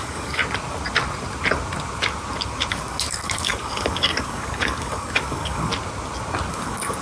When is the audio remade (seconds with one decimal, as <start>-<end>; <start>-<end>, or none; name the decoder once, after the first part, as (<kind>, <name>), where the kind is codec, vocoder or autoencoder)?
0.0-0.4 (codec, DAC); 2.7-5.7; 6.5-7.0